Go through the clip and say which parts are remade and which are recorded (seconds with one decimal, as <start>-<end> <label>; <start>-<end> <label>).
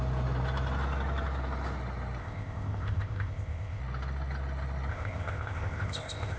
0.0-2.2 recorded; 2.2-3.8 remade; 3.8-4.9 recorded; 4.9-6.4 remade